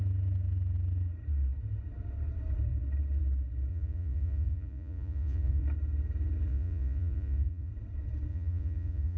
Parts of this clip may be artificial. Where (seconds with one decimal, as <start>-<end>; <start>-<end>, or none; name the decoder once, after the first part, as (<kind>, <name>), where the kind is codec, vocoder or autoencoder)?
3.7-5.6 (vocoder, Vocos); 6.5-7.7; 8.3-9.2